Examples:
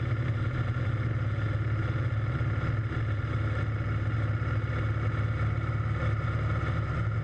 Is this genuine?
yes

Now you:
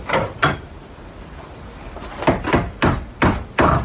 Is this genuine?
yes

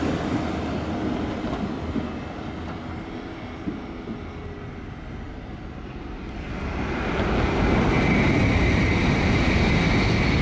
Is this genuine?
yes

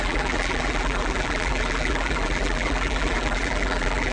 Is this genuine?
no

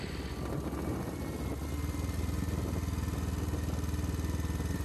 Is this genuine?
yes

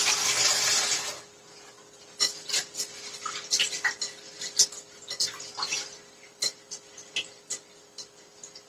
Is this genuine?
yes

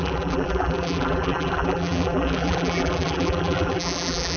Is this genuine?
no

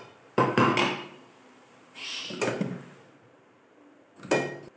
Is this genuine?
no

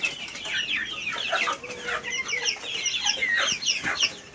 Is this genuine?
yes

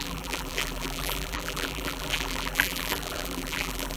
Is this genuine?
no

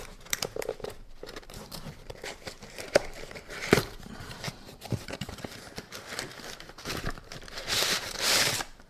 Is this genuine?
no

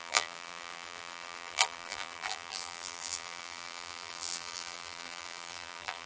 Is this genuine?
no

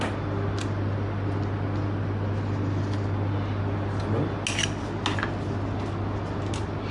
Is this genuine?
yes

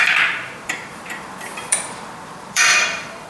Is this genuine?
no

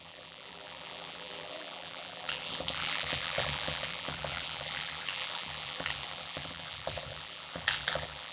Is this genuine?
no